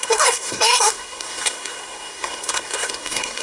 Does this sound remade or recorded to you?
remade